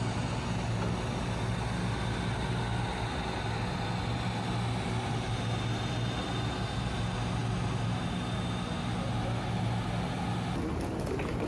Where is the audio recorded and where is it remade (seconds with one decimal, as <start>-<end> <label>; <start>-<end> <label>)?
0.0-11.5 recorded